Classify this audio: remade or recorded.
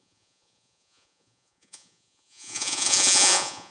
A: remade